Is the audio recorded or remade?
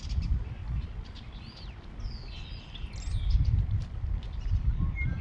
recorded